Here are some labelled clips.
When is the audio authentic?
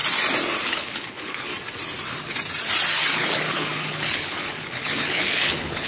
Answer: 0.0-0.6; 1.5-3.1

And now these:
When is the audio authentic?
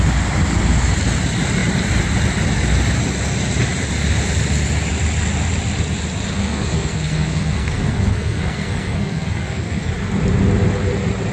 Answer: 0.0-6.4; 9.9-11.3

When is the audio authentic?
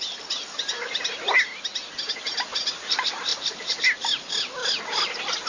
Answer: 0.0-5.5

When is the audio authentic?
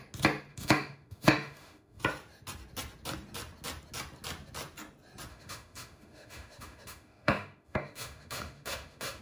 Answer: 0.0-0.5; 2.0-5.3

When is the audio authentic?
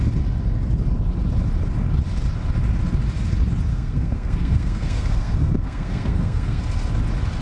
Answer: 0.0-3.7; 6.6-7.4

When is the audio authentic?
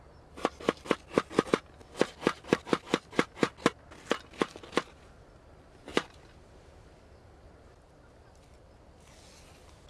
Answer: 0.0-5.9; 7.5-9.9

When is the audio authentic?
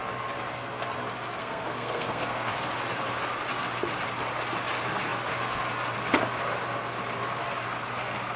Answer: 0.0-1.4; 2.5-8.4